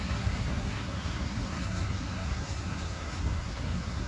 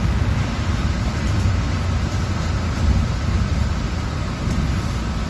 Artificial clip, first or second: first